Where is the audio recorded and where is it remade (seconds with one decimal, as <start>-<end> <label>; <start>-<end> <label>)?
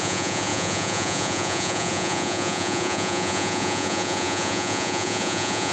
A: 0.0-5.7 remade